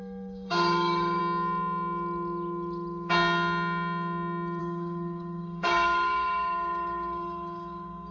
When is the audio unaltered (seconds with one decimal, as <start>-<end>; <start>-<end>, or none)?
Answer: 1.2-4.6